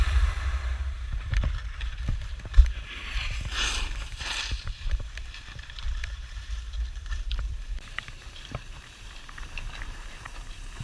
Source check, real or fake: fake